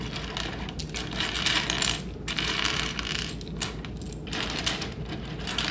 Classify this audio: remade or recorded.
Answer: recorded